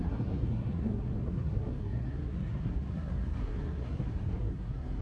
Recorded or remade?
remade